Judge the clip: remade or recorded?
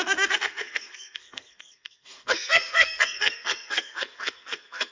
remade